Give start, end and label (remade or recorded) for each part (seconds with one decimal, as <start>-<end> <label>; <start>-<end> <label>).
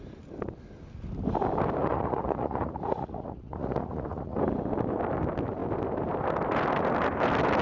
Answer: 0.0-1.8 recorded; 1.8-4.4 remade; 4.4-7.6 recorded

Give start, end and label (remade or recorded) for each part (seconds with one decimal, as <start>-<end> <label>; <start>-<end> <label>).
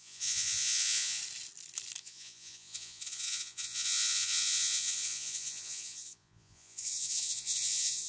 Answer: 0.0-1.2 remade; 1.2-2.0 recorded; 2.0-8.1 remade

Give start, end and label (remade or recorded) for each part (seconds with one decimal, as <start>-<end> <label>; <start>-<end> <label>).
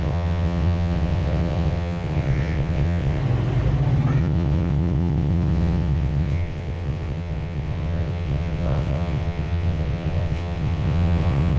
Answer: 0.0-3.2 remade; 3.2-4.2 recorded; 4.2-11.6 remade